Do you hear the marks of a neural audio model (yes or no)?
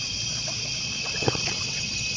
yes